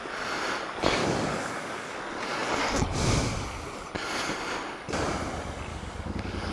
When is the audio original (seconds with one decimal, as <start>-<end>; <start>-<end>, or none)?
0.0-1.0; 1.9-5.7